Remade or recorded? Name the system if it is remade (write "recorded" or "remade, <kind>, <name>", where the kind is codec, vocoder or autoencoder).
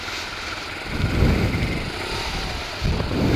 recorded